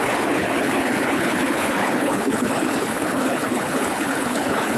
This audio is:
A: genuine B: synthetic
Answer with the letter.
B